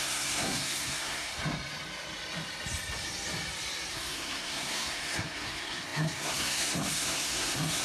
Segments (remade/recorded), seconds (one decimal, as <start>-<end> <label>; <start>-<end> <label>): 0.0-1.3 remade; 1.3-3.9 recorded; 3.9-7.8 remade